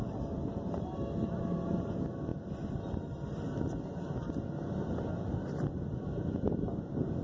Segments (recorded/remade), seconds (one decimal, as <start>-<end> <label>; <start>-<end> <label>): 0.0-7.2 recorded